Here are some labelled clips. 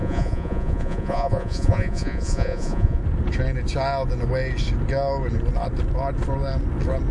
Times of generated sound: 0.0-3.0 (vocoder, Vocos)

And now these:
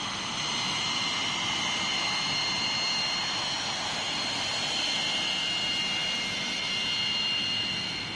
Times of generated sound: none

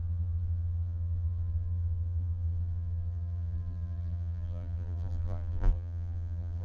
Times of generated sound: 0.0-6.6 (vocoder, BigVGAN v2)

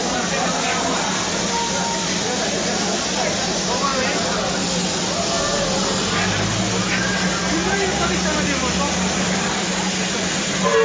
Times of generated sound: none

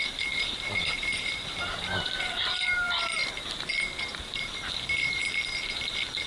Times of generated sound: 0.0-3.2 (vocoder, BigVGAN v2); 4.0-5.2

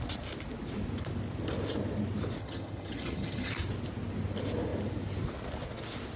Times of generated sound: 2.4-3.5 (vocoder, HiFi-GAN)

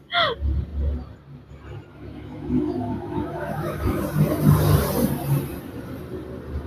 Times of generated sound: 1.9-4.0 (autoencoder, DAC-VAE)